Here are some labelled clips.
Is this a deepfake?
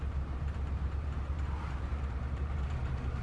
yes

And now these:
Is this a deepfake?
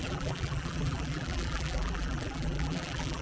yes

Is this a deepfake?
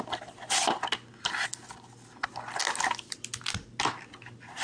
no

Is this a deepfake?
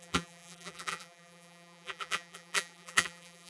yes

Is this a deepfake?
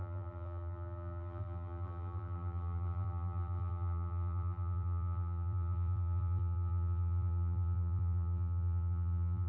yes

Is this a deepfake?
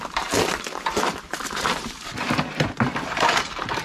yes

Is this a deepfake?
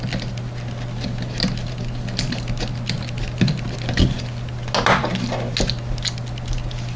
no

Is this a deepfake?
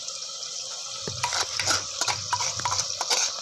no